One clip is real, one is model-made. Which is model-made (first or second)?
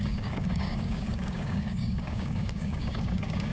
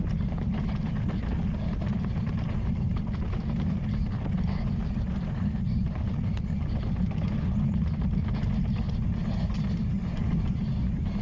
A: first